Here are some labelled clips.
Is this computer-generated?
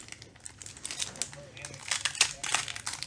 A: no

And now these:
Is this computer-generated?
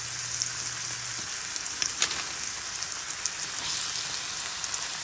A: no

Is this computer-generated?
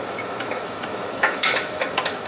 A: yes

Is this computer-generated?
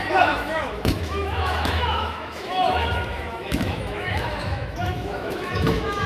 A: yes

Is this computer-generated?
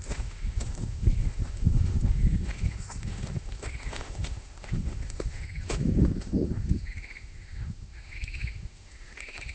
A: yes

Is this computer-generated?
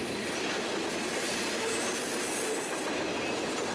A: no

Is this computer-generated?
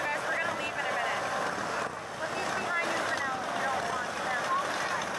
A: no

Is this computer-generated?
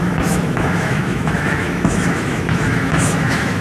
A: yes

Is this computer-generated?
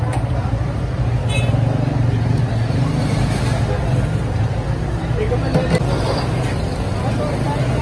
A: no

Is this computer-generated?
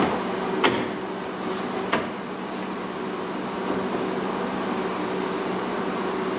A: no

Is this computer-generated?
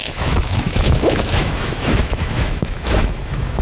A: yes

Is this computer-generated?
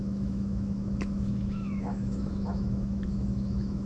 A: yes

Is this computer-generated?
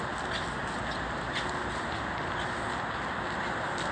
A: no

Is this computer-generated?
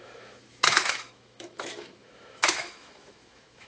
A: yes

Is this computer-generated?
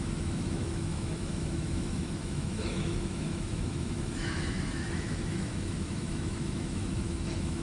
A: yes